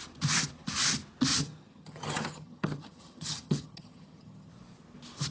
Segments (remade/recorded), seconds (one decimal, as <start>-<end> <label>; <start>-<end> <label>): 0.0-1.3 recorded; 1.3-4.5 remade; 4.5-5.3 recorded